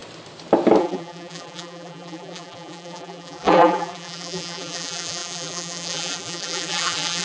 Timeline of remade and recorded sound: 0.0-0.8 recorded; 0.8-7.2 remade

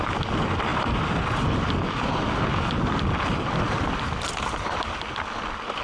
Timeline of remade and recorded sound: 0.0-5.8 recorded

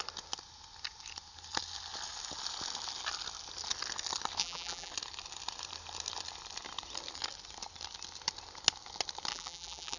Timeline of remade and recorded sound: 0.0-4.4 recorded; 4.4-4.9 remade; 4.9-9.3 recorded; 9.3-10.0 remade